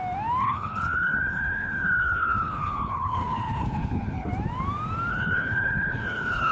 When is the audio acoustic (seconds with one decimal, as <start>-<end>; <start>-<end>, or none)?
0.0-0.4; 4.3-5.1